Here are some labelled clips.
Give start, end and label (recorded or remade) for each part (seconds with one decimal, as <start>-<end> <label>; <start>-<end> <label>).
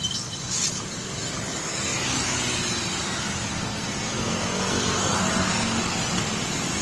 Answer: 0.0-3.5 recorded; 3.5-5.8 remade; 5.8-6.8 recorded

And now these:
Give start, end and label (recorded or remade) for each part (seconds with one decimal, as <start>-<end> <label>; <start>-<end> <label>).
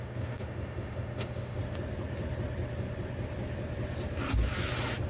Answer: 0.0-1.6 remade; 1.6-5.1 recorded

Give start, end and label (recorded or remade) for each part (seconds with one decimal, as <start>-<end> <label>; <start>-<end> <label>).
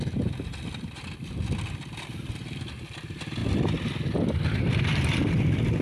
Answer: 0.0-5.8 recorded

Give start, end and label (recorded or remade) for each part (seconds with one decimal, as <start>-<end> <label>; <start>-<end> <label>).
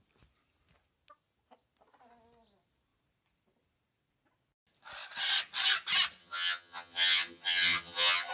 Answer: 0.0-6.2 recorded; 6.2-8.3 remade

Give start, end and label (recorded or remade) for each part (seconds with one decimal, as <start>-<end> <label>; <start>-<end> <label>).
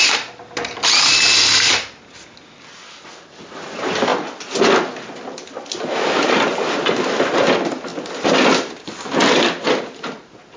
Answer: 0.0-10.6 recorded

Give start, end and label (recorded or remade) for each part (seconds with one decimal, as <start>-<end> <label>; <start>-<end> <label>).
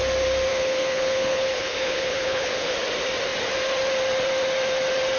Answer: 0.0-0.5 recorded; 0.5-2.7 remade; 2.7-5.2 recorded